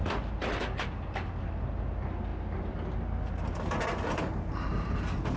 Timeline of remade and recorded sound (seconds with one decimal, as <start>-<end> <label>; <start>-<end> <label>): 0.0-5.4 recorded